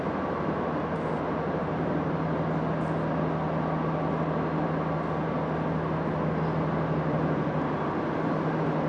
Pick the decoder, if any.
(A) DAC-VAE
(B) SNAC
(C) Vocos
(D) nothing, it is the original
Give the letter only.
D